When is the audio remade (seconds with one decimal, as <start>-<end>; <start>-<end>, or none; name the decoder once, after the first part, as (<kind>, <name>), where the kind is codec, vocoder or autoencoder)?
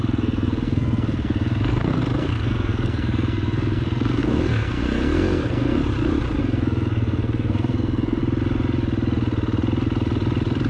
0.0-5.8 (codec, SNAC); 6.4-8.2